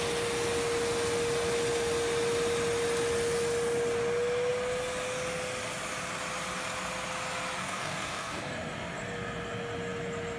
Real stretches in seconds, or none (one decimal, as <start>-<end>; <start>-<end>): 0.0-7.6; 8.4-10.4